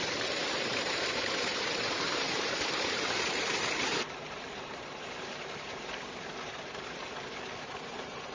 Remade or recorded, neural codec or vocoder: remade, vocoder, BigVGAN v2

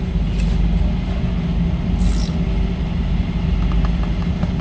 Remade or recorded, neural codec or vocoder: recorded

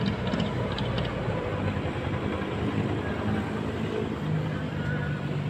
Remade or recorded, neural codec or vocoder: recorded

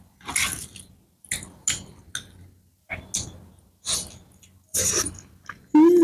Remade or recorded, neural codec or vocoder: recorded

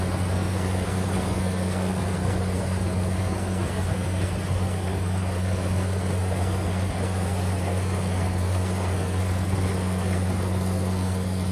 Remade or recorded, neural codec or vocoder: remade, codec, SNAC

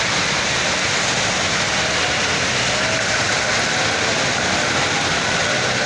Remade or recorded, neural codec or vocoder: recorded